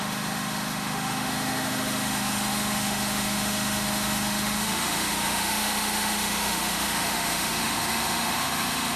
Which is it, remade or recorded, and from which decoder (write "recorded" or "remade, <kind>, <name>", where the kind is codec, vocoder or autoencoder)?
remade, autoencoder, DAC-VAE